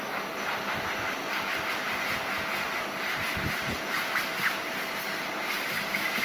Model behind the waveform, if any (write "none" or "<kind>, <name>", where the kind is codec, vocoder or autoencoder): none